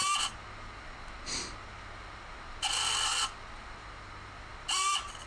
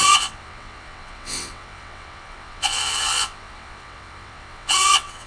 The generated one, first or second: second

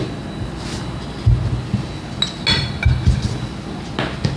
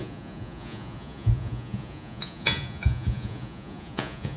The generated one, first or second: second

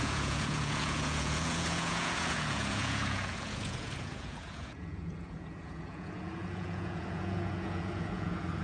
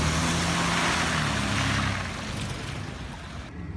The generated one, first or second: first